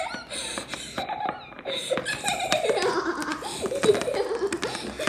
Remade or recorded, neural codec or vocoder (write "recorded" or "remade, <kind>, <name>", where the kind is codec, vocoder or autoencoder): recorded